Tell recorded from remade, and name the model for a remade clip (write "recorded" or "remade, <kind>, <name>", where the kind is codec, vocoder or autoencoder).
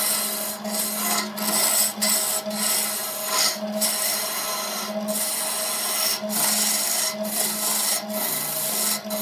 recorded